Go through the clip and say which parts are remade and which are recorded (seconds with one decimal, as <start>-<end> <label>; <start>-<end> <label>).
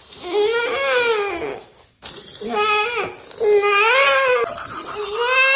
0.0-1.5 recorded; 1.5-2.1 remade; 2.1-5.6 recorded